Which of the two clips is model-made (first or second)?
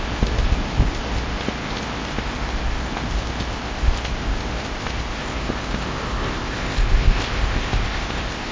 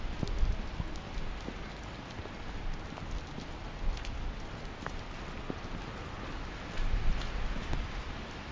first